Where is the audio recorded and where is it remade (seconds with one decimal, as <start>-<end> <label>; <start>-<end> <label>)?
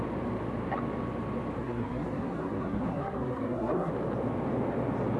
0.0-1.6 recorded; 1.6-3.9 remade; 3.9-5.2 recorded